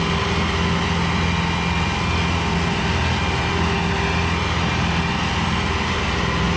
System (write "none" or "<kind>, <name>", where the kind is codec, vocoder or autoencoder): none